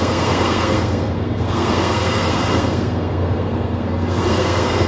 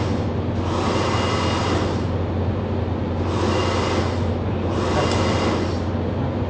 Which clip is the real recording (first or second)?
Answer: second